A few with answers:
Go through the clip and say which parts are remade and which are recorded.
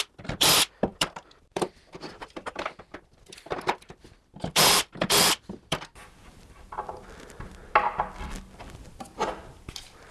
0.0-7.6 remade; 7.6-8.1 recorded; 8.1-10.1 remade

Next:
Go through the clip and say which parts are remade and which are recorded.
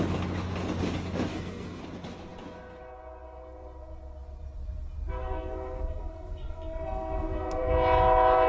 0.0-1.3 recorded; 1.3-1.8 remade; 1.8-5.2 recorded; 5.2-7.7 remade; 7.7-8.5 recorded